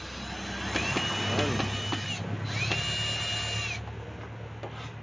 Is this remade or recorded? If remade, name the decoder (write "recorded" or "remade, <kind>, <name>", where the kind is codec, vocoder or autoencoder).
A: recorded